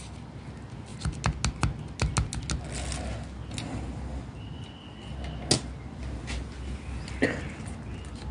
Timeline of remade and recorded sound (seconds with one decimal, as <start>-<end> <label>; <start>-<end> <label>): 0.0-8.3 recorded